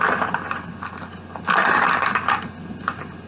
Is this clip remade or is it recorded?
recorded